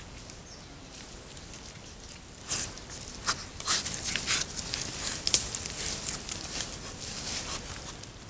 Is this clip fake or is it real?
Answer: real